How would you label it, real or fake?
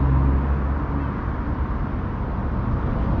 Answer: real